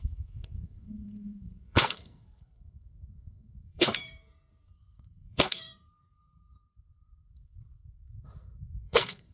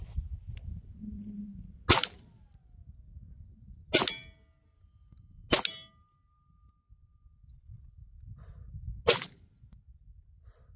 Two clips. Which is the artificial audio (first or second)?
first